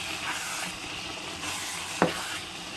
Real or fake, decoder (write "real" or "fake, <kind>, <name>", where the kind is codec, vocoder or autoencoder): real